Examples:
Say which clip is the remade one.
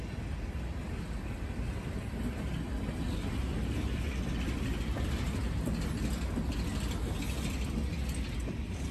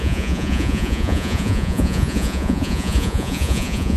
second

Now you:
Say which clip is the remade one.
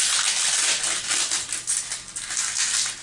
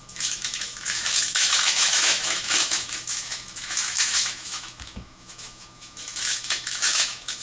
second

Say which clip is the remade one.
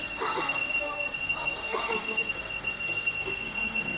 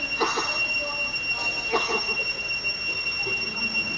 first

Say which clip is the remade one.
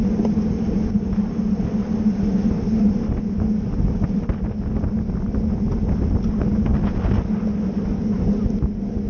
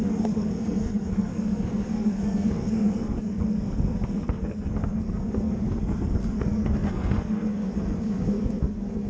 second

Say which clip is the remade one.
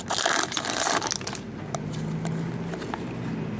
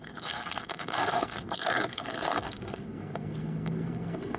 second